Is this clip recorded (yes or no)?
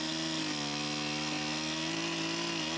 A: yes